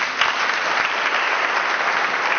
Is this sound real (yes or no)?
yes